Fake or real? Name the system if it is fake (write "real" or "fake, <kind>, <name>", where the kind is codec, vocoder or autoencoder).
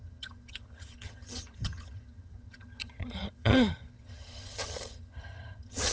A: fake, vocoder, HiFi-GAN